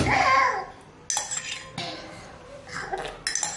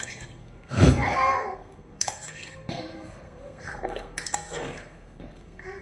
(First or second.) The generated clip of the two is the second